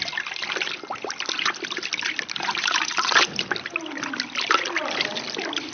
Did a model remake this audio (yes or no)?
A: no